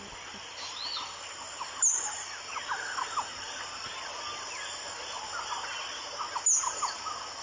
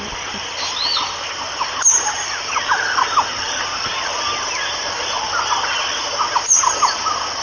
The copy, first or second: second